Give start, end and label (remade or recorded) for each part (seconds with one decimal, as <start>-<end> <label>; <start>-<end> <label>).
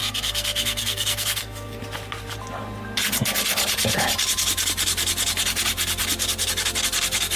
0.0-1.8 remade; 1.8-7.4 recorded